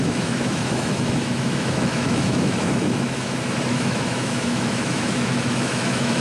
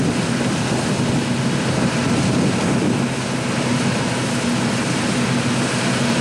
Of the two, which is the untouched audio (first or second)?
second